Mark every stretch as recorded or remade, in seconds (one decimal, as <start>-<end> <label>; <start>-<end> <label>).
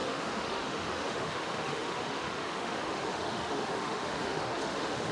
0.0-5.1 remade